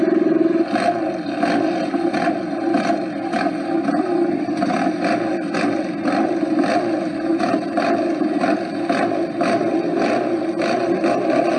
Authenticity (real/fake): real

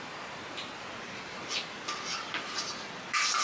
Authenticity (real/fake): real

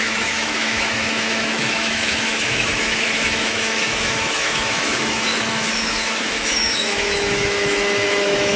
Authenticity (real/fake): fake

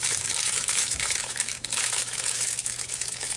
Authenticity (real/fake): fake